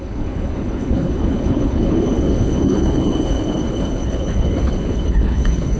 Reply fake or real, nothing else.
fake